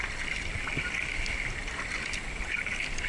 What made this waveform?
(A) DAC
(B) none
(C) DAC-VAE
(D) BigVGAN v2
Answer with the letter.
B